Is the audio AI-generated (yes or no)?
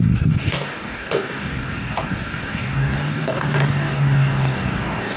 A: yes